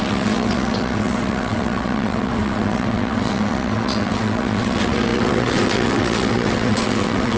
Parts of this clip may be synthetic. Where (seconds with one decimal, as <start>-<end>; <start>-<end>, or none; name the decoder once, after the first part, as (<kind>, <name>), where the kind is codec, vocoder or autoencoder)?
0.0-7.4 (vocoder, WaveNeXt)